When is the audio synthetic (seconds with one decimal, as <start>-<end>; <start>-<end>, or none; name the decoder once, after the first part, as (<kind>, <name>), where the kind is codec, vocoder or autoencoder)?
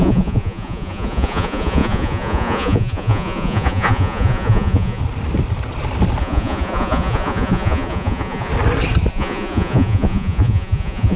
0.0-5.0 (vocoder, Vocos); 6.2-8.5; 9.1-11.2